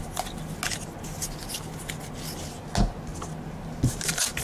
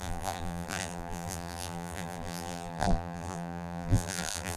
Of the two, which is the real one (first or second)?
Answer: first